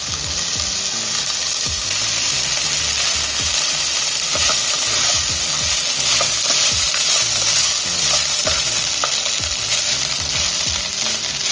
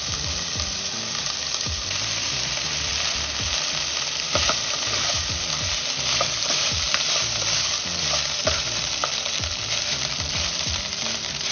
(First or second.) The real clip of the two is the first